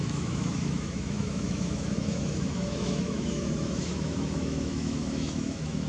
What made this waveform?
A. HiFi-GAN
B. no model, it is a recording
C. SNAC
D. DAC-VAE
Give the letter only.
D